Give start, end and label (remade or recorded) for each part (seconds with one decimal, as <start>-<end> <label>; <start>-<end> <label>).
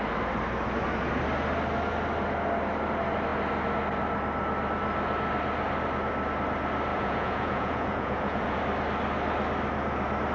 0.0-6.9 recorded; 6.9-8.6 remade; 8.6-10.3 recorded